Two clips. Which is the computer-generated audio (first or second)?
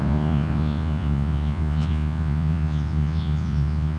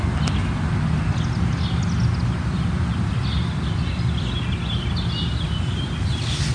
first